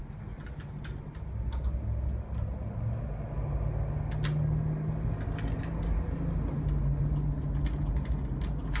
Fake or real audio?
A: real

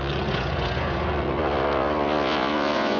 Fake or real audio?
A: fake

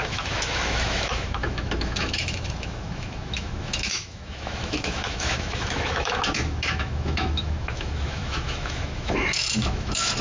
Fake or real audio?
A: fake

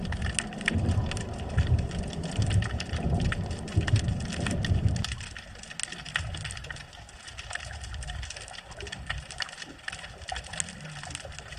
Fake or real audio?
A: real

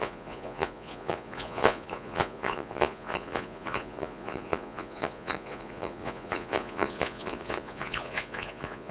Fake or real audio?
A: fake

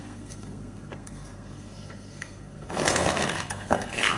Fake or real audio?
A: fake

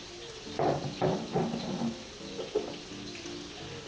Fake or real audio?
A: real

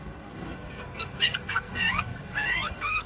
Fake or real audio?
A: fake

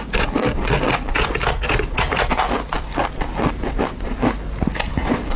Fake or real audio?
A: real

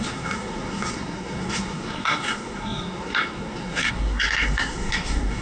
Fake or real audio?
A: fake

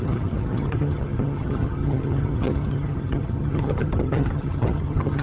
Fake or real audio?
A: fake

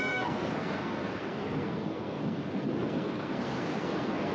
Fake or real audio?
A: fake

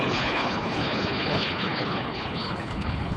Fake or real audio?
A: fake